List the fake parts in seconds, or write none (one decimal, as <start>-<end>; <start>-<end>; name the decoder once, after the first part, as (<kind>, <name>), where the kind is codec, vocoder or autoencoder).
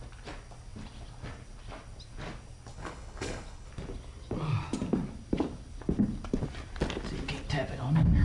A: 2.7-3.7 (codec, HILCodec)